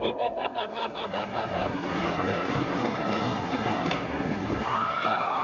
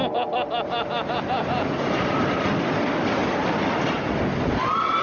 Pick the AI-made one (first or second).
first